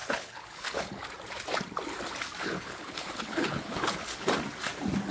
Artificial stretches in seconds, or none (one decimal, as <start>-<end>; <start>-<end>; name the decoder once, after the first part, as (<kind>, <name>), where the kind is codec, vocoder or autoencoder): 0.0-1.0 (codec, HILCodec); 2.4-4.3